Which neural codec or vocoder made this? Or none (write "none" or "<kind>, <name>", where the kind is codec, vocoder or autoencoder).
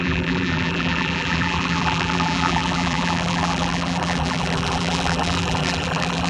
vocoder, BigVGAN v2